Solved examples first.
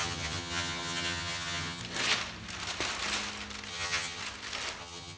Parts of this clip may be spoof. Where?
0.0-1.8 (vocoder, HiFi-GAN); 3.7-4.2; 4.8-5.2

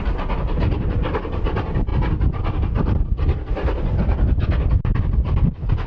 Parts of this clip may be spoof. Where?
none

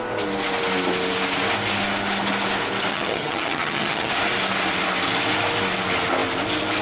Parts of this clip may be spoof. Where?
2.9-4.1 (vocoder, HiFi-GAN)

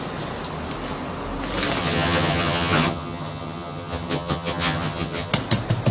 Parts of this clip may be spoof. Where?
1.8-5.3 (vocoder, HiFi-GAN)

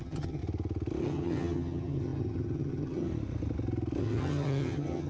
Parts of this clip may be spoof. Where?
0.0-0.4 (vocoder, HiFi-GAN); 1.0-3.1; 4.0-5.1

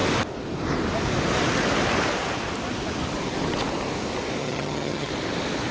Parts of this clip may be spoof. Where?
4.4-5.1 (vocoder, HiFi-GAN)

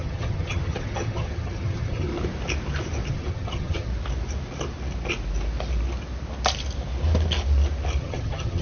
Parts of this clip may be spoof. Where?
0.0-2.1 (vocoder, HiFi-GAN); 3.1-3.9; 8.0-8.6

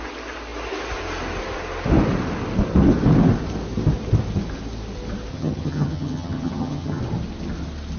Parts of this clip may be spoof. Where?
5.3-7.0 (vocoder, HiFi-GAN)